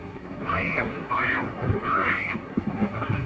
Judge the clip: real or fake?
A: fake